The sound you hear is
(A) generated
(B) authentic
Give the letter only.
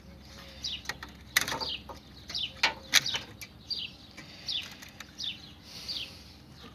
B